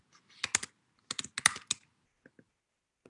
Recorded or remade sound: recorded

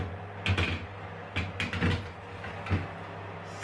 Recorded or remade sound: recorded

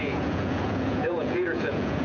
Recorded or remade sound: remade